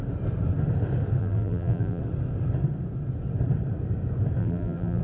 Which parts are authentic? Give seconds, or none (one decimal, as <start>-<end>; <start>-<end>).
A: 0.0-1.2; 2.0-4.4